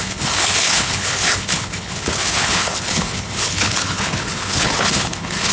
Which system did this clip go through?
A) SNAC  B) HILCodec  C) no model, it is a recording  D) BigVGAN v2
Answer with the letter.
B